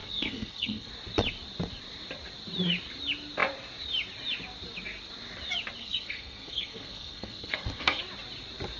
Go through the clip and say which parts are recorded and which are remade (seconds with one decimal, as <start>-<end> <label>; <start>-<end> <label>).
0.0-0.9 remade; 0.9-5.8 recorded; 5.8-8.0 remade; 8.0-8.8 recorded